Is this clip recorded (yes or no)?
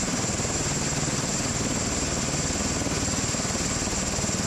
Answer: yes